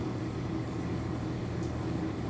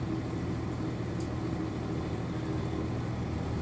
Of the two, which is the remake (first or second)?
first